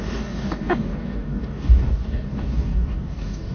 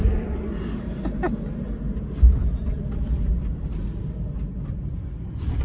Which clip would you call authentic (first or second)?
second